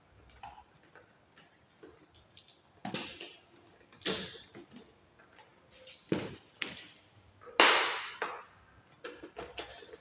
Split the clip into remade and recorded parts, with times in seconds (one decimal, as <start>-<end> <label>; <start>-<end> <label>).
0.0-10.0 recorded